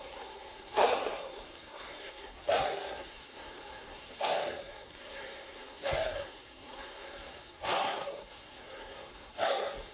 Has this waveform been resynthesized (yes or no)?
yes